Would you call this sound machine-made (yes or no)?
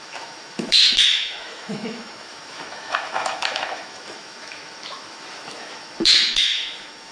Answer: yes